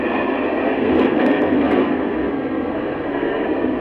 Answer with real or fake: fake